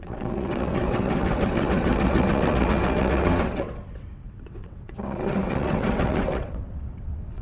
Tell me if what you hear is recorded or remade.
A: remade